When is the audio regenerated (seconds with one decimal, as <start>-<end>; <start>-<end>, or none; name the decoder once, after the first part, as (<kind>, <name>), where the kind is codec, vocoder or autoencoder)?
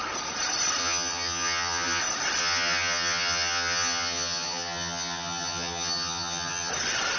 0.8-2.0 (vocoder, HiFi-GAN); 2.4-6.7